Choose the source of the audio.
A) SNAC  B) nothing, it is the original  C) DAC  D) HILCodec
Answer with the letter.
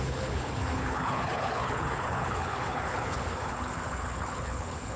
D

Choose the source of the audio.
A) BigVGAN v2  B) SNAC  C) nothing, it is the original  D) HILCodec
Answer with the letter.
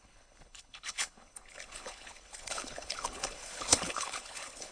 D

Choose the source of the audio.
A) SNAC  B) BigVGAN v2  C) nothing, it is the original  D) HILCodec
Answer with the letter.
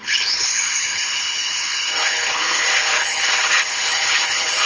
D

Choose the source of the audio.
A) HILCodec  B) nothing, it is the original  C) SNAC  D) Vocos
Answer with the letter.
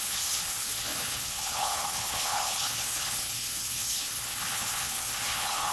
A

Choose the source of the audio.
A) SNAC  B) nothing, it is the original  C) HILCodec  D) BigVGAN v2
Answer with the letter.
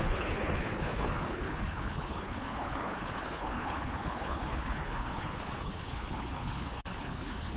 C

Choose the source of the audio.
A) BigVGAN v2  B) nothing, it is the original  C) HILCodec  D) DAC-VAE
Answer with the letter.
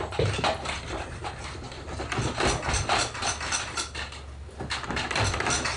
B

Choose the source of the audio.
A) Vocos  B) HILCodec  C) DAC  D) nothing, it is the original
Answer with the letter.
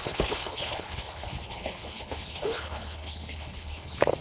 B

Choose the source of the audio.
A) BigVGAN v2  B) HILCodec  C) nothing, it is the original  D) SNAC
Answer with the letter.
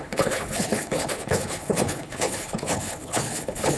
B